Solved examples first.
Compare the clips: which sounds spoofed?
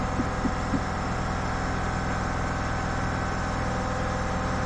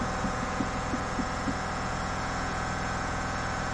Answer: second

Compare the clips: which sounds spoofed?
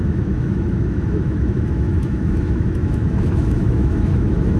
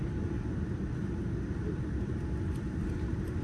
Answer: first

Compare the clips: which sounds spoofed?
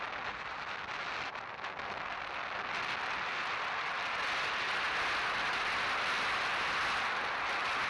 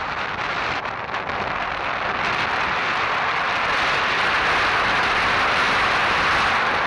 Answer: second